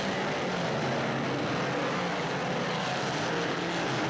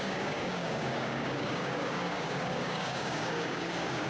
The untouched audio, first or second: first